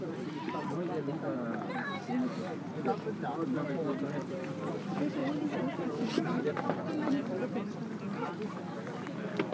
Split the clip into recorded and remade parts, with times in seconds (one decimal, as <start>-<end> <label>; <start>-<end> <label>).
0.0-5.2 recorded; 5.2-7.1 remade; 7.1-9.5 recorded